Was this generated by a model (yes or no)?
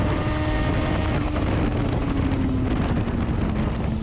no